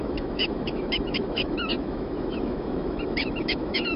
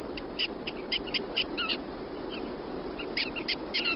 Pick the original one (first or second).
second